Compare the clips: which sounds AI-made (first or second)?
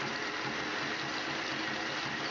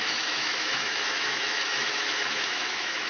second